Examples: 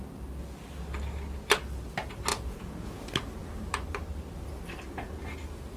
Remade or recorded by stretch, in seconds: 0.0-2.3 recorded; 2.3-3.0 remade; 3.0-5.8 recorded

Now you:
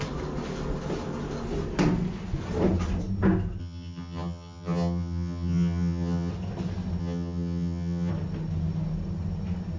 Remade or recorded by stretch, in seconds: 0.0-3.6 recorded; 3.6-6.3 remade; 6.3-7.0 recorded; 7.0-8.1 remade; 8.1-9.8 recorded

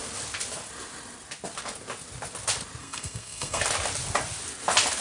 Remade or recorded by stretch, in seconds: 0.0-2.8 recorded; 2.8-3.6 remade; 3.6-5.0 recorded